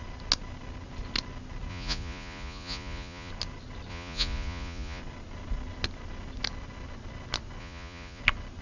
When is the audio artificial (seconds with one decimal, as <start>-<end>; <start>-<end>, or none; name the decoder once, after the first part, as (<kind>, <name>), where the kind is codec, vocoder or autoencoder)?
1.7-3.3 (vocoder, Vocos); 3.9-5.0; 7.6-8.2